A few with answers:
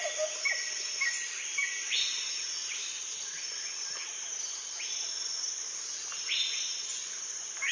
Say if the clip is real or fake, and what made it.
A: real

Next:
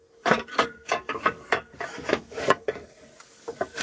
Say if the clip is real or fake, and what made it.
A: fake, codec, DAC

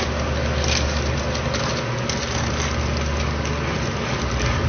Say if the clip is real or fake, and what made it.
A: real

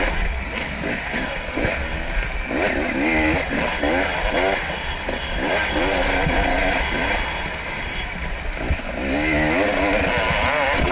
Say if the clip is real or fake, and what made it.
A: real